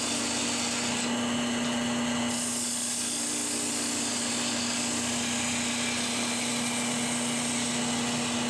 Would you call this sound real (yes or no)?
yes